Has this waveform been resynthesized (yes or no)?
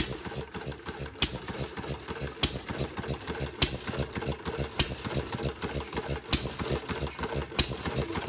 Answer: no